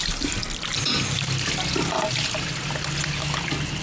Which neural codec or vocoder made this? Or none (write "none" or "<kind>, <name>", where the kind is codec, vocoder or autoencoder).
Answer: none